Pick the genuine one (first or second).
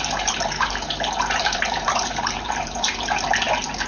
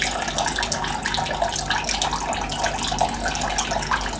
second